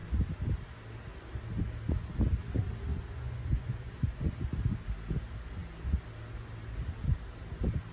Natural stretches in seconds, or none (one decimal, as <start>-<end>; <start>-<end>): 0.0-2.9; 4.3-7.9